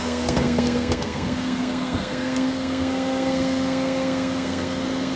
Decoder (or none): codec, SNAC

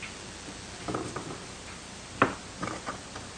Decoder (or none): none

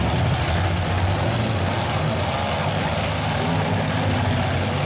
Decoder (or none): none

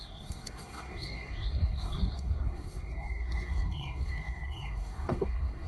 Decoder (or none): codec, SNAC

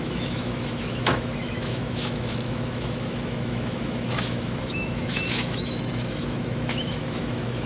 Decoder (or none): autoencoder, DAC-VAE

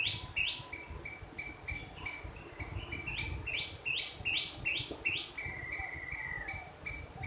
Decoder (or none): none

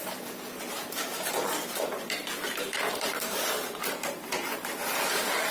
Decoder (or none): vocoder, BigVGAN v2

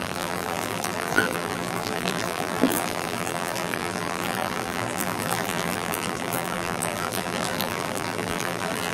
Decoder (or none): vocoder, BigVGAN v2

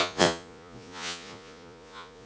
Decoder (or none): vocoder, Vocos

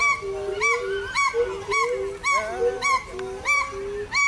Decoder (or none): none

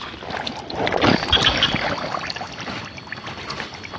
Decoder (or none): none